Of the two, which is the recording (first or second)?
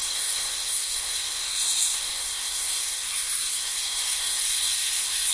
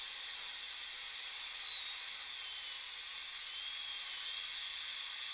second